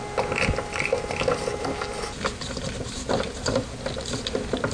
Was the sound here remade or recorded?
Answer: recorded